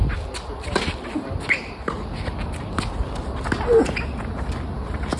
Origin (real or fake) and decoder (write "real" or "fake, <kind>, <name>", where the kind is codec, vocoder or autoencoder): real